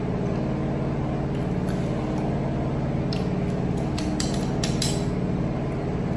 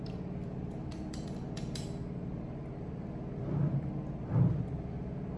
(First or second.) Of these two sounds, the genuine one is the first